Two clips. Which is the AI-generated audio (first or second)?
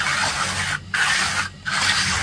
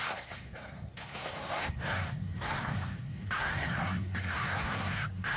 second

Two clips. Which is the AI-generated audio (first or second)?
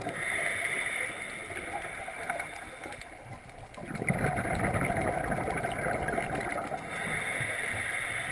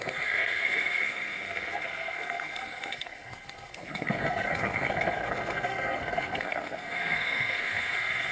second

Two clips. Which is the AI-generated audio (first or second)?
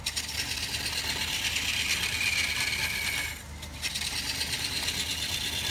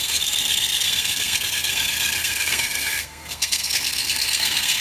second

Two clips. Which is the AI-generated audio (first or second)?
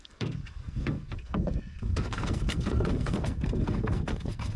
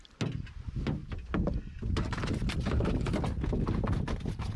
first